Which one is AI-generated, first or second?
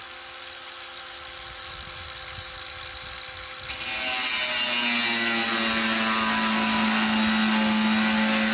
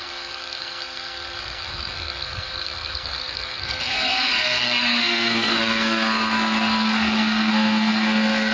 second